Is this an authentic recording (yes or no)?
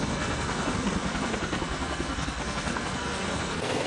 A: no